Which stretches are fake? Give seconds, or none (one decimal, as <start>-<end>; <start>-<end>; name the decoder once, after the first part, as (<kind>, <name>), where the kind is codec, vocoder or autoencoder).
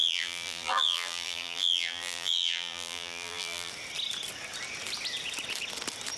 0.0-3.7 (vocoder, BigVGAN v2)